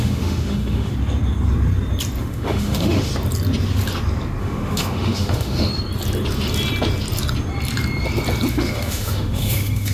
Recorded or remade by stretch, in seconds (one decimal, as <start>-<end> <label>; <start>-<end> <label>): 0.0-0.9 remade; 0.9-2.2 recorded; 2.2-3.1 remade; 3.1-4.4 recorded; 4.4-5.7 remade; 5.7-8.5 recorded; 8.5-9.9 remade